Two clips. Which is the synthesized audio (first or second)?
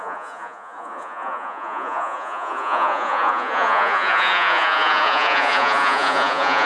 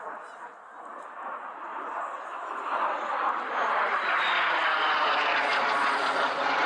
first